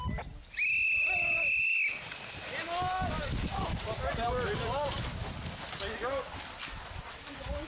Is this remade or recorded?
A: recorded